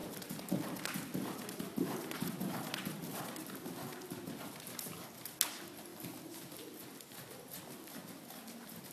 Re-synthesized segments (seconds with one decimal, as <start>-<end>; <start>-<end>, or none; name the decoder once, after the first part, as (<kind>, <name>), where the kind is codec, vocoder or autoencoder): none